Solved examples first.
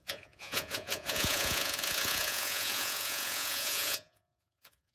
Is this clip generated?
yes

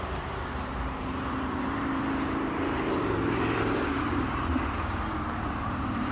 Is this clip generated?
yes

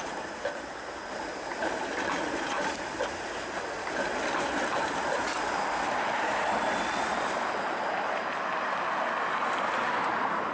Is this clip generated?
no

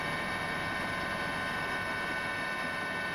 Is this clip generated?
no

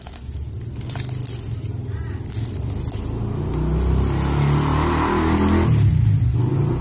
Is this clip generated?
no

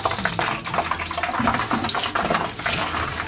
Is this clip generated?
no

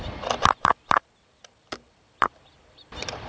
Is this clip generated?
yes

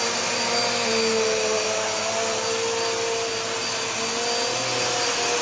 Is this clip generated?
no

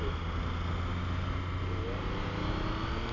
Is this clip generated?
no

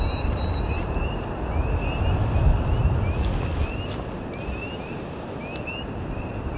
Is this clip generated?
no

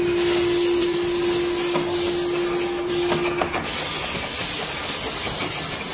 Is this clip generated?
no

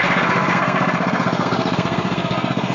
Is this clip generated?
yes